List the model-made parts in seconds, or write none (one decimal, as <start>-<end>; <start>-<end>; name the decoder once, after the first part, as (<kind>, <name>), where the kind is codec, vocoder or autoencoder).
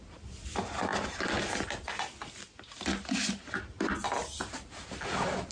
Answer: none